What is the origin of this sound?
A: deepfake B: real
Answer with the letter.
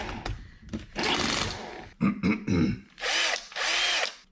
B